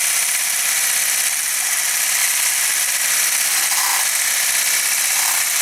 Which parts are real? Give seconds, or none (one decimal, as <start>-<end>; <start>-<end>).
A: 0.0-2.2; 3.0-5.6

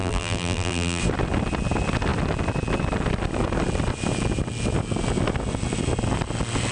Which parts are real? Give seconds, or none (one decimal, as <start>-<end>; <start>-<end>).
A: 1.0-6.7